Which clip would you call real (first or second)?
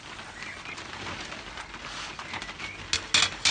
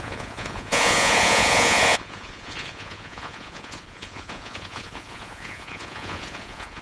first